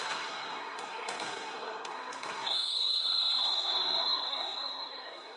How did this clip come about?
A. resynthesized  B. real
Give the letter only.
A